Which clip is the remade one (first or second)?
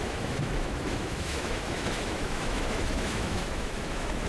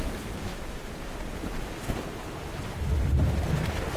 first